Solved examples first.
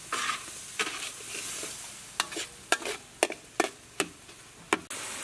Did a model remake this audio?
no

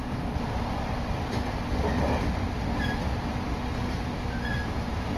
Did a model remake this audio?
no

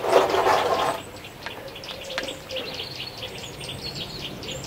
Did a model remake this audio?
no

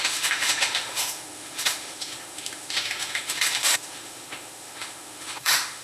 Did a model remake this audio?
yes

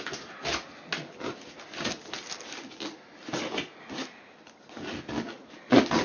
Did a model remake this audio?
no